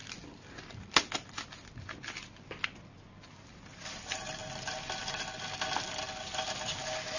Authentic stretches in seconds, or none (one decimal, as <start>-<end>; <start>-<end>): 0.0-7.2

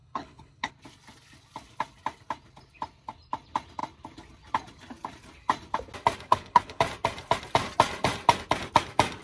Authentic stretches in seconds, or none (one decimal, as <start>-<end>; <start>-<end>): 0.7-6.3; 6.8-9.2

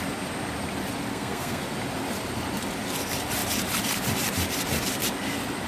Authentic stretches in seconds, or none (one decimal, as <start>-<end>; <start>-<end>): 0.0-1.1; 1.6-5.7